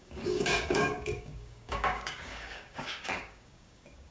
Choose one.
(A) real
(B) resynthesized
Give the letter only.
B